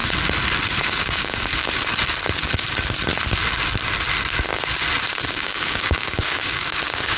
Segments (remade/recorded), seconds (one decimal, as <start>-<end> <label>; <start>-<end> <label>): 0.0-0.8 recorded; 0.8-1.7 remade; 1.7-5.3 recorded; 5.3-7.2 remade